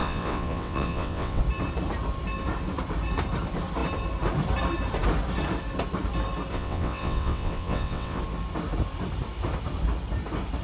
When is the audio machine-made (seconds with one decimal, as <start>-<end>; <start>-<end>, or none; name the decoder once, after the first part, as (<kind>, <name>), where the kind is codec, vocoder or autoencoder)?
0.0-1.4 (vocoder, WaveNeXt); 6.5-8.2